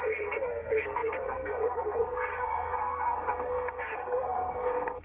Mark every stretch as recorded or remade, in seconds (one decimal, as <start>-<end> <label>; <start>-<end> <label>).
0.0-5.0 remade